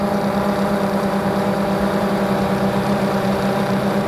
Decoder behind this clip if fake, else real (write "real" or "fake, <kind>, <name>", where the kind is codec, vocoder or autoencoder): fake, vocoder, BigVGAN v2